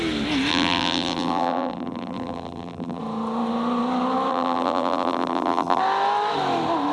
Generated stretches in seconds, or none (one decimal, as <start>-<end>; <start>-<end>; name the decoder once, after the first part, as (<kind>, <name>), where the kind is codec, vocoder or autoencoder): 0.5-3.0 (vocoder, BigVGAN v2); 4.3-5.8